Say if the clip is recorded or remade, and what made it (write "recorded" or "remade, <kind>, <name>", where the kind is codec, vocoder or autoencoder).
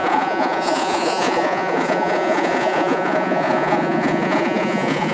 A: remade, vocoder, Vocos